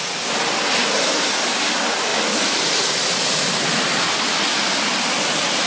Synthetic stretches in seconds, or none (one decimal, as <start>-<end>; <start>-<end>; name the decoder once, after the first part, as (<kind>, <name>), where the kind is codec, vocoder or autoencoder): 2.1-3.5 (vocoder, BigVGAN v2)